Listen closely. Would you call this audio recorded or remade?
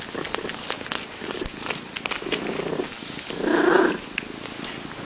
recorded